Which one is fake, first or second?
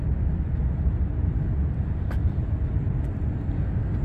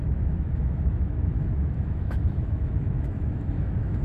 second